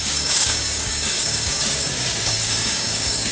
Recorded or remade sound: remade